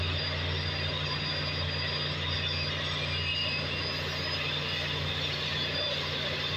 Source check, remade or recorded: recorded